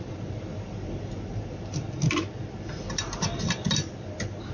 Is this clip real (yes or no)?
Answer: yes